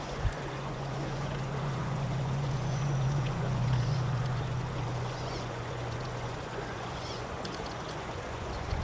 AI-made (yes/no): yes